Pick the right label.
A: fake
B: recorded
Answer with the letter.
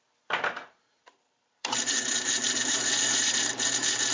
A